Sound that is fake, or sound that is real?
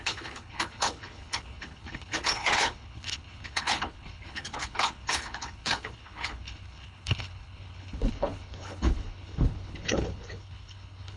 fake